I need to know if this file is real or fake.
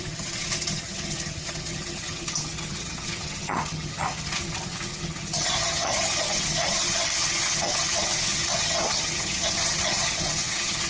fake